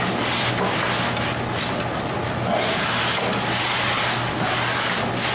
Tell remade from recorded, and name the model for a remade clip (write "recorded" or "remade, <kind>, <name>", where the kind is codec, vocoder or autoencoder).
recorded